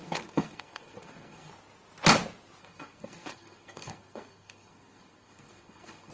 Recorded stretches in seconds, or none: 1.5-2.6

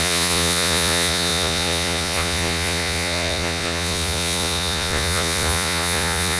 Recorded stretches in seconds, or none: none

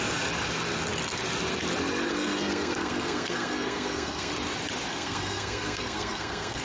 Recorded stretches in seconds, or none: 0.0-2.1; 4.3-4.9

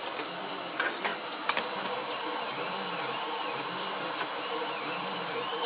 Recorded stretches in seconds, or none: 0.0-5.7

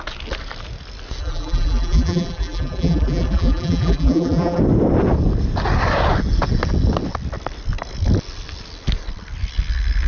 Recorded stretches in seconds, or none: 0.0-1.2; 4.6-10.1

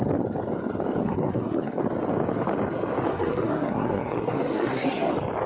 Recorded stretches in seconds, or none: 0.0-1.0; 1.8-3.1; 5.1-5.5